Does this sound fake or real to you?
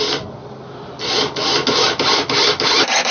real